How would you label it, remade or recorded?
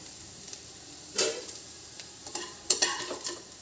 remade